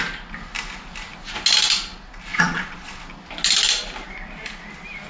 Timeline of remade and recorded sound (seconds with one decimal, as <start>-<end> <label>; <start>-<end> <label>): 0.0-2.3 recorded; 2.3-3.0 remade; 3.0-5.1 recorded